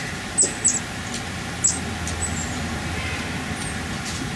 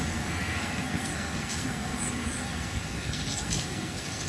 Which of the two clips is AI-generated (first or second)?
second